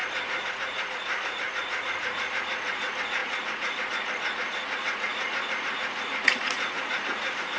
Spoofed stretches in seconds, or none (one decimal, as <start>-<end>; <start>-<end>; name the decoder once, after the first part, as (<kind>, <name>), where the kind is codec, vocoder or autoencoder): 0.0-7.6 (vocoder, Vocos)